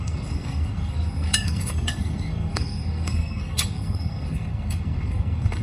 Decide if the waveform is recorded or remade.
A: remade